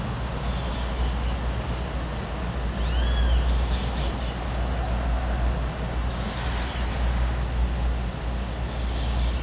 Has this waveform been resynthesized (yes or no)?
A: no